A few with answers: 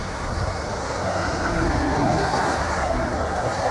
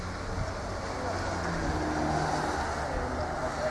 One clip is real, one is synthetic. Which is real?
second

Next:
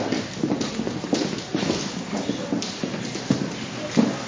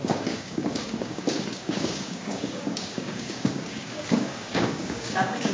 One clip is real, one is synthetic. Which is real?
first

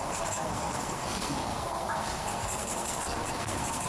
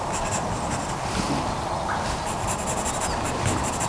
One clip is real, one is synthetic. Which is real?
second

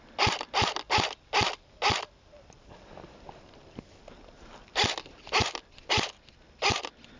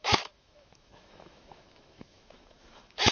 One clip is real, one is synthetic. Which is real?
first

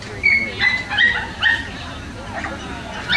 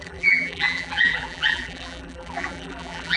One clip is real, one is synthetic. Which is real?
first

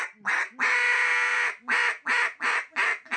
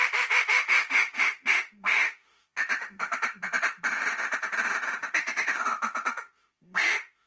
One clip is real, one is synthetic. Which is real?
first